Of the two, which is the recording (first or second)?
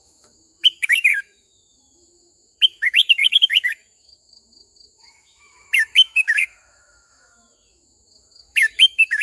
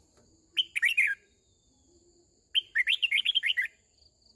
second